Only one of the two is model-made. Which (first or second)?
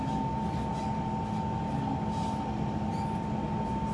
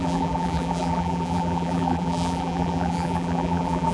second